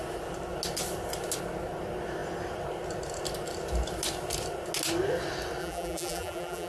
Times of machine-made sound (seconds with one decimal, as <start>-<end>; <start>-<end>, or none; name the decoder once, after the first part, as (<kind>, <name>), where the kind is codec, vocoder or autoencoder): 5.6-6.7 (vocoder, BigVGAN v2)